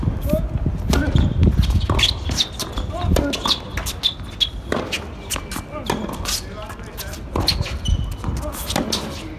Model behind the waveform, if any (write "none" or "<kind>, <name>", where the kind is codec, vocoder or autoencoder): none